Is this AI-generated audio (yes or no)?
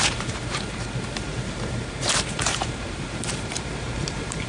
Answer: yes